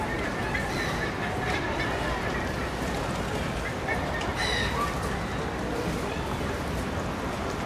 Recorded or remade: recorded